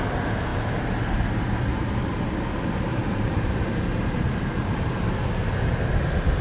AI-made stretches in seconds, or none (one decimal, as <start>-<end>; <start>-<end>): 1.7-2.4; 2.9-4.9